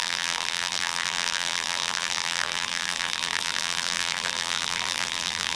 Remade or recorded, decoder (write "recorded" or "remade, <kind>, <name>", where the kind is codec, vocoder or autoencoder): remade, vocoder, BigVGAN v2